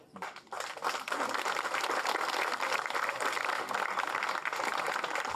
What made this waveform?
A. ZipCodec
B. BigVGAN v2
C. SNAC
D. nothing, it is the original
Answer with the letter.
D